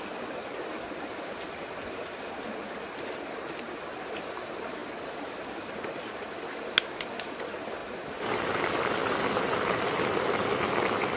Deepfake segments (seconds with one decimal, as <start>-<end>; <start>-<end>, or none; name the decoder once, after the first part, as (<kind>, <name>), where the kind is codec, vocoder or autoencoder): none